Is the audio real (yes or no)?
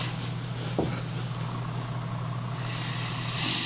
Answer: yes